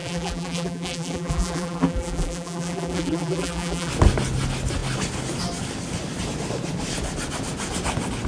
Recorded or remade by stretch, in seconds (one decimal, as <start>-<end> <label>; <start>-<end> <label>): 0.0-3.9 remade; 3.9-8.3 recorded